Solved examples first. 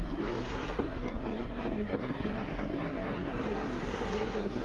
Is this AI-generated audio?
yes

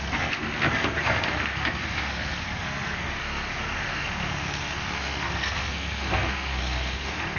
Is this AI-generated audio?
yes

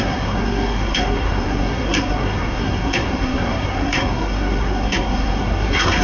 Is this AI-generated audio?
yes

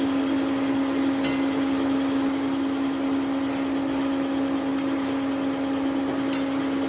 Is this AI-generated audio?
no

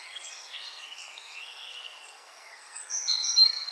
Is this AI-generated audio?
yes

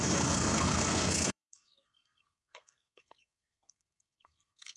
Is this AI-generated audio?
yes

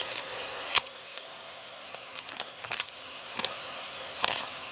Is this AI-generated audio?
yes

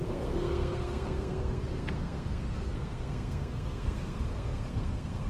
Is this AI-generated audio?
yes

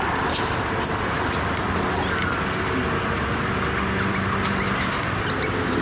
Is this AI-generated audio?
no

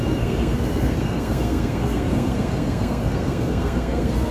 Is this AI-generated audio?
yes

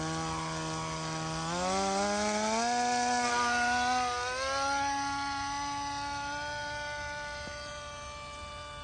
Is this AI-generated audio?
no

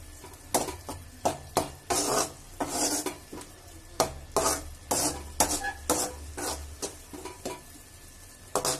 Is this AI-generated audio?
no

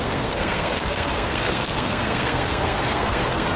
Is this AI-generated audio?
yes